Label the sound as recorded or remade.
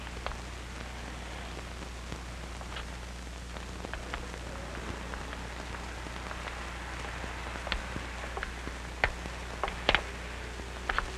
recorded